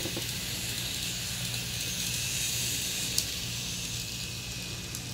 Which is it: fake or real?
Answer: real